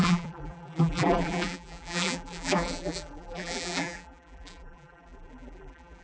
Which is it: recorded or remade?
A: remade